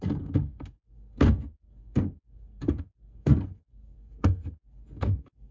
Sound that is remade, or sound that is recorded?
remade